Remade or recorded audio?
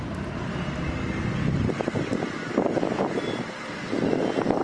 recorded